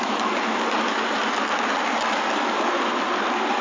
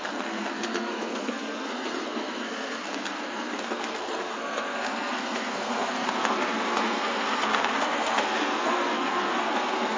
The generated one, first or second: second